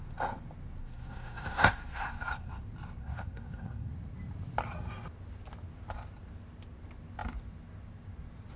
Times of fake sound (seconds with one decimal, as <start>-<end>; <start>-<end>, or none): 0.8-2.5; 3.0-3.9